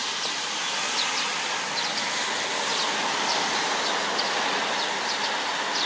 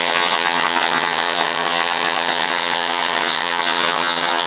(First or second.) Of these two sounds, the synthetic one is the second